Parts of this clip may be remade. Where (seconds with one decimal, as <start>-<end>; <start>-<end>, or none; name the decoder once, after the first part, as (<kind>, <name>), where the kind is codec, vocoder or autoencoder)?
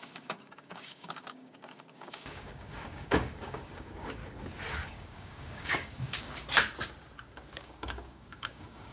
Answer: 0.0-4.2 (codec, DAC); 4.7-6.4; 7.6-8.9